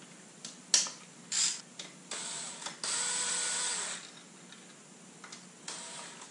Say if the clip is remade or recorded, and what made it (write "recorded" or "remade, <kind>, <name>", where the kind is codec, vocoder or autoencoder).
recorded